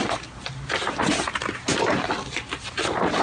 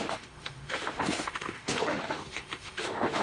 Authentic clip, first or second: first